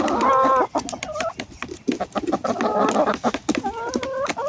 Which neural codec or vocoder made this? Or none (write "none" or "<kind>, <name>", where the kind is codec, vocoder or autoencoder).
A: none